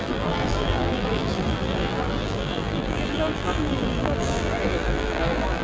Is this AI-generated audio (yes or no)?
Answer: yes